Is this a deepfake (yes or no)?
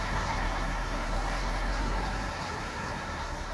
yes